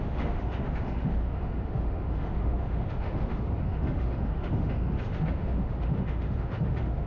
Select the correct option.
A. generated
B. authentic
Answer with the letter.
A